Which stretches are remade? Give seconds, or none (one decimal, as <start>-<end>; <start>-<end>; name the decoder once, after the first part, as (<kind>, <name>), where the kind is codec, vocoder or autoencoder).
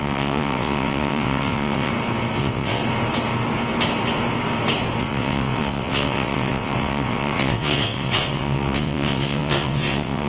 0.0-1.9 (vocoder, WaveNeXt); 2.4-2.8; 5.0-10.3